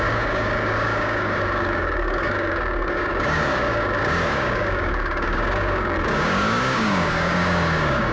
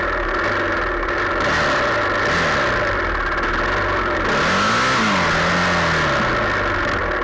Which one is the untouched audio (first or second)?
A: second